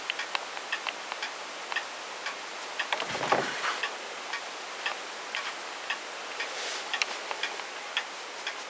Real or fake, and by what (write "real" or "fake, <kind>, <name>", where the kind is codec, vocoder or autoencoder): real